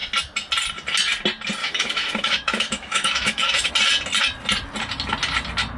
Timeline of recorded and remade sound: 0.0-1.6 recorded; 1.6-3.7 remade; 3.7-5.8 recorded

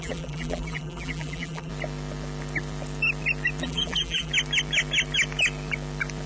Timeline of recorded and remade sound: 0.0-1.7 remade; 1.7-3.6 recorded; 3.6-4.3 remade; 4.3-6.3 recorded

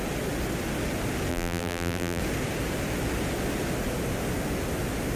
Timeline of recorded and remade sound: 0.0-1.3 recorded; 1.3-2.2 remade; 2.2-5.2 recorded

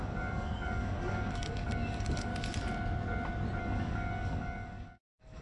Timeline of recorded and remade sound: 0.0-2.3 remade; 2.3-3.6 recorded; 3.6-5.4 remade

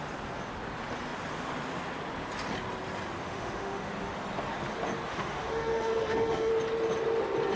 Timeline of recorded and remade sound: 0.0-3.2 recorded; 3.2-3.9 remade; 3.9-5.1 recorded; 5.1-6.5 remade; 6.5-7.6 recorded

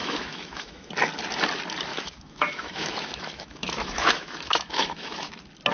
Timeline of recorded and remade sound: 0.0-0.9 remade; 0.9-1.9 recorded; 1.9-5.3 remade; 5.3-5.7 recorded